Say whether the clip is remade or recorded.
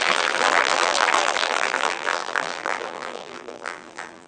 remade